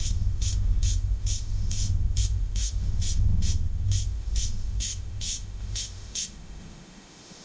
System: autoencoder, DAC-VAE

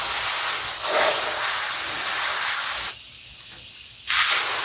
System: none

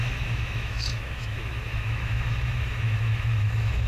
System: autoencoder, DAC-VAE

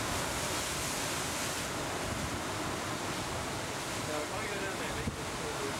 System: none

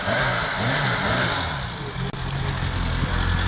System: none